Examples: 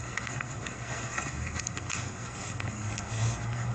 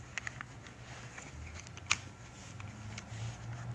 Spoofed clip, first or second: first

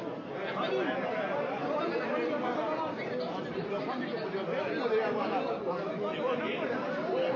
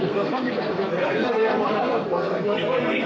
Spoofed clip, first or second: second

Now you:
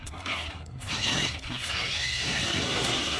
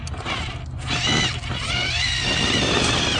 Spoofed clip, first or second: first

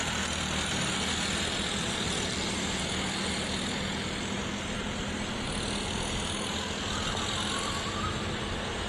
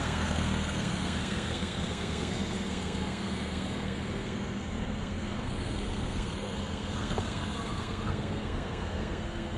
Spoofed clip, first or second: second